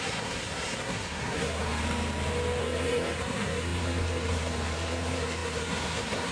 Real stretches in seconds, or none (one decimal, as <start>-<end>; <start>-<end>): 1.8-2.6